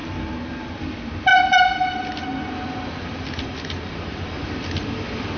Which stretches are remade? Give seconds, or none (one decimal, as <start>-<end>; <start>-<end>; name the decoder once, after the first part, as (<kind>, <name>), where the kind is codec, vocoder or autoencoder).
none